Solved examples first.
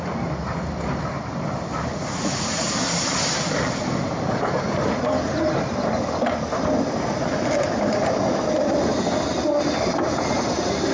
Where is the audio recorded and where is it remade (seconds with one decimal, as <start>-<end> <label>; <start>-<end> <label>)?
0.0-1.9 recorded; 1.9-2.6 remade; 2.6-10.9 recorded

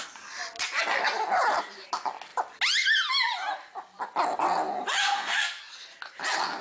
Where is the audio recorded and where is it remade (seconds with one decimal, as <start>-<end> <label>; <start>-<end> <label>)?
0.0-5.0 recorded; 5.0-5.6 remade; 5.6-6.6 recorded

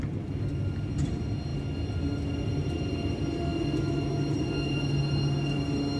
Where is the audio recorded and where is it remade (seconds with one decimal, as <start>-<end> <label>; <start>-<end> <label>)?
0.0-6.0 recorded

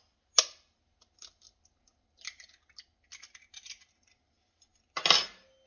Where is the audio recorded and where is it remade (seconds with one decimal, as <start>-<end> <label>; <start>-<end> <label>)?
0.0-5.7 recorded

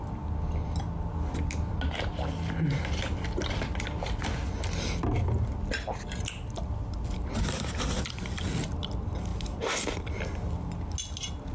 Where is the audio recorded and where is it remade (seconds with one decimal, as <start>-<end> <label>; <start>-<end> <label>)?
0.0-11.5 recorded